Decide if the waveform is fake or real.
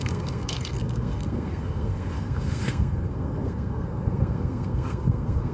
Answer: fake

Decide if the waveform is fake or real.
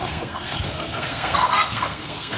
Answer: fake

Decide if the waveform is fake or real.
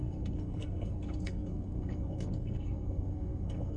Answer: fake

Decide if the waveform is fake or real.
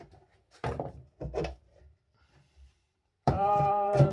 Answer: fake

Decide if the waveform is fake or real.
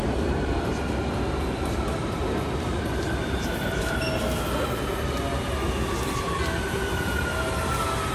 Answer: real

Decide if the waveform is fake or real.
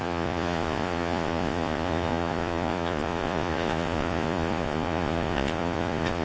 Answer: fake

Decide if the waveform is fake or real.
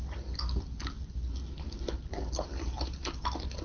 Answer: real